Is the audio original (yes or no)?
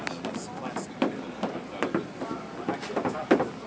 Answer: yes